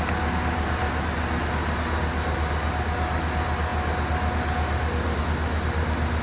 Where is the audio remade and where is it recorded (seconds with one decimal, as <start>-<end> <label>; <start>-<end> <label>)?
0.0-6.2 recorded